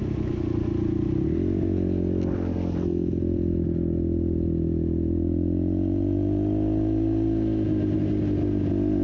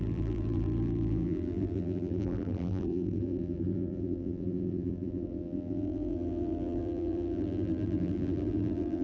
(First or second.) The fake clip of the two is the second